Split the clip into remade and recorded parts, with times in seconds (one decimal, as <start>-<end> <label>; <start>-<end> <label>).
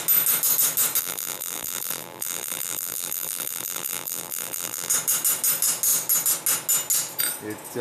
0.0-1.0 recorded; 1.0-4.9 remade; 4.9-7.8 recorded